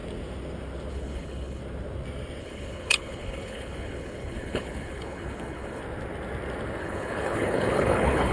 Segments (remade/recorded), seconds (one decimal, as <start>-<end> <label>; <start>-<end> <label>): 0.0-0.9 recorded; 0.9-1.6 remade; 1.6-2.4 recorded; 2.4-5.8 remade; 5.8-6.8 recorded; 6.8-8.3 remade